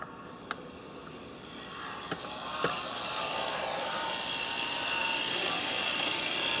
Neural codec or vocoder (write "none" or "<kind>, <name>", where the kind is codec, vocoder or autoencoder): none